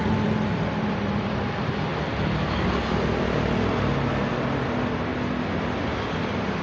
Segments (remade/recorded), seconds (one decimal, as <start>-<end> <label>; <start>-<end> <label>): 0.0-1.9 remade; 1.9-4.3 recorded; 4.3-5.1 remade; 5.1-6.1 recorded; 6.1-6.6 remade